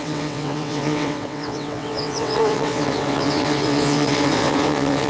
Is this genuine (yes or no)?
no